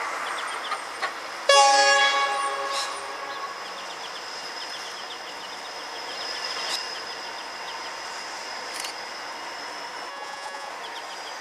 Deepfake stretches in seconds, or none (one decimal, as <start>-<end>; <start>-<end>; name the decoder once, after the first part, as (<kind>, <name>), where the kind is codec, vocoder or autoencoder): 10.1-10.7 (vocoder, Vocos)